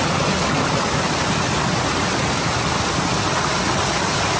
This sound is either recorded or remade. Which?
recorded